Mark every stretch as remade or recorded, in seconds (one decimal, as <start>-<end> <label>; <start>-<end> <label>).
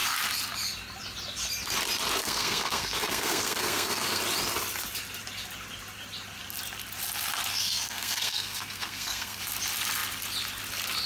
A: 0.0-2.2 recorded; 2.2-4.2 remade; 4.2-7.5 recorded; 7.5-9.4 remade; 9.4-11.1 recorded